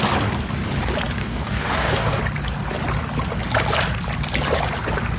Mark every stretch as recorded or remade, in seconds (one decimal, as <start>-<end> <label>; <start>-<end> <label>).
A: 0.0-1.2 recorded; 1.2-2.2 remade; 2.2-5.2 recorded